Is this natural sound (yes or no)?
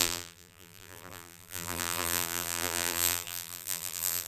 no